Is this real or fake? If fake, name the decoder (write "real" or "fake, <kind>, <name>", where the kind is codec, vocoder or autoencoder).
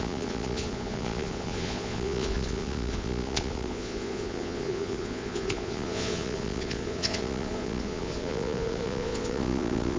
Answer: fake, vocoder, Vocos